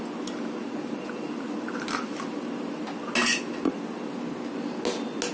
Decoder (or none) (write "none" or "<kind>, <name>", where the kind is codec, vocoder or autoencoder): none